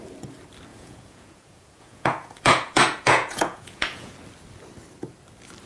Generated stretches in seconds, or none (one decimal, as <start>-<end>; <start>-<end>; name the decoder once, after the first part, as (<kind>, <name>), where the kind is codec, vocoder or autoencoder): 0.7-4.1 (vocoder, Vocos)